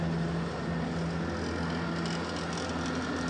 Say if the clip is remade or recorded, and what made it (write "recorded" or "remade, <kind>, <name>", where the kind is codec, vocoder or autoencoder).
recorded